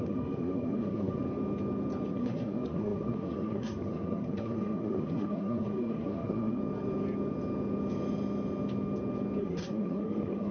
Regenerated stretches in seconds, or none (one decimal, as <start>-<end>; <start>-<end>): 0.0-1.2; 2.1-6.6; 9.4-10.5